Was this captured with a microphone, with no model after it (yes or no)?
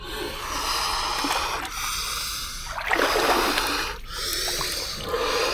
yes